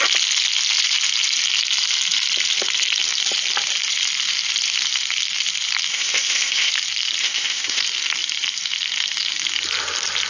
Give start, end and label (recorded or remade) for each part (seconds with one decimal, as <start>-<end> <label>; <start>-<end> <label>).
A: 0.0-5.9 recorded; 5.9-6.7 remade; 6.7-7.2 recorded; 7.2-7.8 remade; 7.8-10.3 recorded